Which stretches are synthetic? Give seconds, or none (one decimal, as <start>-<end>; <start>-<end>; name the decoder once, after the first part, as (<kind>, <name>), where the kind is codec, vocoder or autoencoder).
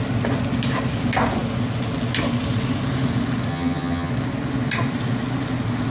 3.5-4.1 (vocoder, HiFi-GAN)